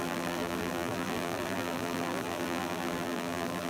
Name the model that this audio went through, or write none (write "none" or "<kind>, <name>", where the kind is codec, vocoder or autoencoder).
vocoder, BigVGAN v2